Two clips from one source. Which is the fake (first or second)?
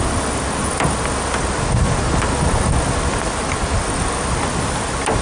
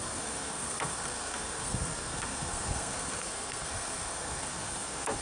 second